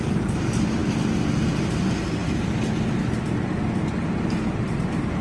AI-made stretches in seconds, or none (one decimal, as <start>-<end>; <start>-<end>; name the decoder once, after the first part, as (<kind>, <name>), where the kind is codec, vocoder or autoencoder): none